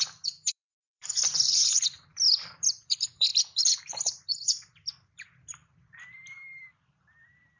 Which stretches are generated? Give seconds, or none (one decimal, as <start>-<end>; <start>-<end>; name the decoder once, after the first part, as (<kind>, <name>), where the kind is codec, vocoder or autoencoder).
0.0-3.3 (vocoder, BigVGAN v2); 3.8-7.6